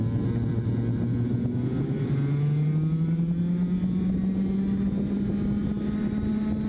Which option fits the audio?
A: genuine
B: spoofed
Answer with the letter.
A